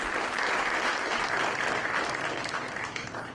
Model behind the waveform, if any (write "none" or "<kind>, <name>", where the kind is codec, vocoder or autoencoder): vocoder, BigVGAN v2